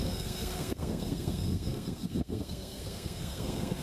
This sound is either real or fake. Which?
fake